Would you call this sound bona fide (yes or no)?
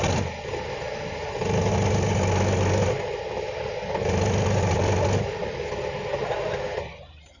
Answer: yes